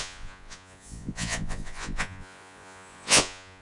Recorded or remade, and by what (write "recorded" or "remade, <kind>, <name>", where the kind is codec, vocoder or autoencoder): remade, vocoder, Vocos